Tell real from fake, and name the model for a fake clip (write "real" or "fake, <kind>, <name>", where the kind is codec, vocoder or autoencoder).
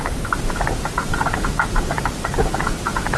real